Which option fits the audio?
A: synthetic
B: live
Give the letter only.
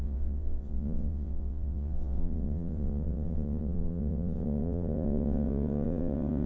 A